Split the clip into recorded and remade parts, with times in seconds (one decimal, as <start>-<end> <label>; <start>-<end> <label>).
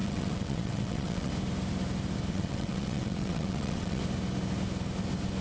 0.0-1.3 remade; 1.3-2.3 recorded; 2.3-4.0 remade; 4.0-5.4 recorded